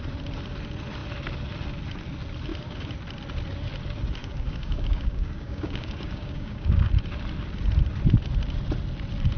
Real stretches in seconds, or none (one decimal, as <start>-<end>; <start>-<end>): 0.0-4.2; 6.9-9.4